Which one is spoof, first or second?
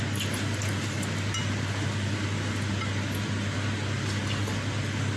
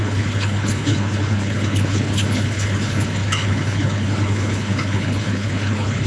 second